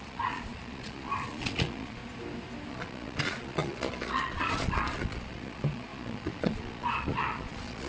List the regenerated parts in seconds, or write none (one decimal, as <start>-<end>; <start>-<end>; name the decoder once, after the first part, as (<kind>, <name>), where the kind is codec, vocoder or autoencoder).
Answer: 0.0-2.0 (vocoder, Vocos); 2.7-7.9